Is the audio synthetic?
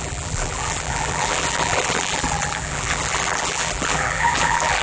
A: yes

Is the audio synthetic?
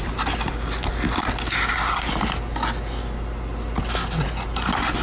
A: no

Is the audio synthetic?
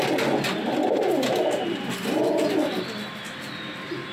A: no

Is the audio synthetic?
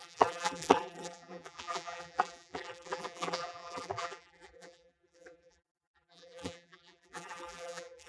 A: yes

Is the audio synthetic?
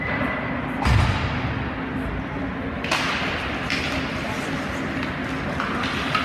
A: no